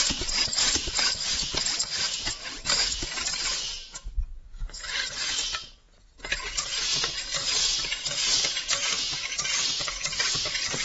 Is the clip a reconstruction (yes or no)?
yes